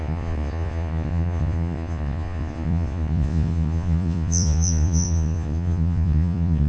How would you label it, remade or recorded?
remade